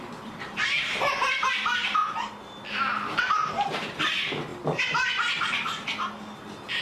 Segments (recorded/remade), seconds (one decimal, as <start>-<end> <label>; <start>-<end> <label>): 0.0-2.0 remade; 2.0-2.7 recorded; 2.7-4.5 remade; 4.5-6.8 recorded